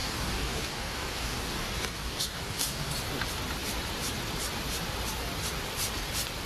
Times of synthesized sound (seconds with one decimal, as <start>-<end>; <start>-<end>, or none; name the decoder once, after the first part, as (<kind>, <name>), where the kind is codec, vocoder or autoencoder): 0.0-2.9 (codec, DAC)